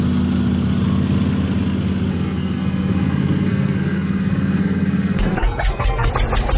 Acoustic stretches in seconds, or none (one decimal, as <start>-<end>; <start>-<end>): 0.0-2.1; 6.1-6.6